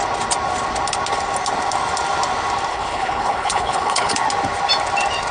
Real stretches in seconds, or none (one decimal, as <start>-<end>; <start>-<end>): 0.0-2.7; 4.1-5.3